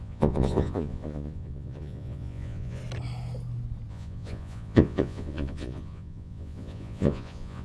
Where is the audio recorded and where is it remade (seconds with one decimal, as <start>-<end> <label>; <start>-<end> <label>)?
0.0-2.8 remade; 2.8-3.9 recorded; 3.9-7.6 remade